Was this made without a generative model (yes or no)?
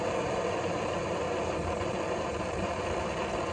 yes